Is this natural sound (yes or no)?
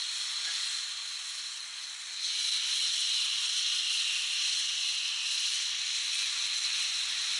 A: yes